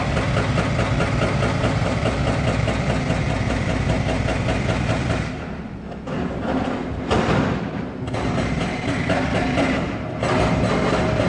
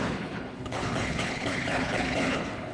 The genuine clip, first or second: first